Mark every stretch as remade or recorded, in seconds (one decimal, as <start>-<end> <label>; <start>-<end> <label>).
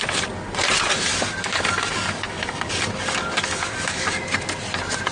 0.0-1.1 recorded; 1.1-4.2 remade; 4.2-5.1 recorded